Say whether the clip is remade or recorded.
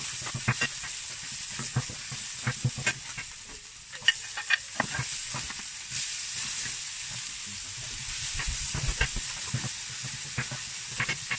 recorded